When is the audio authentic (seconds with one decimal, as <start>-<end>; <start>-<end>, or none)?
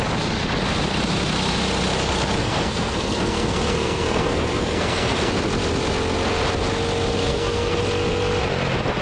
0.0-2.4; 5.3-7.2; 7.8-9.0